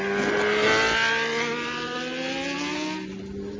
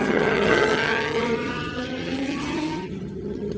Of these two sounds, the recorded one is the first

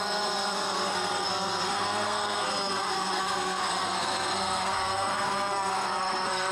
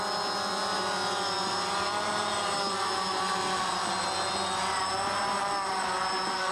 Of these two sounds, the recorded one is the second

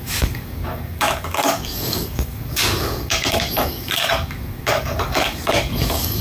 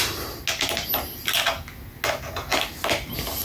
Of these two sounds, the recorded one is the second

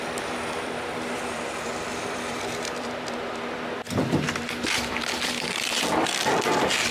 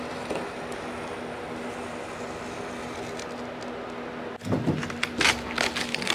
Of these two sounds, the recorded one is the second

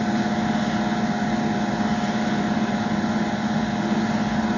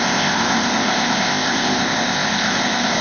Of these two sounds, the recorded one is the first